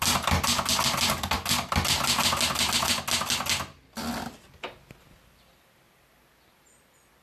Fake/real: real